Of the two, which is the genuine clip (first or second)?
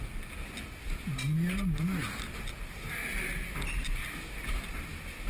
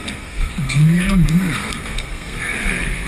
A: first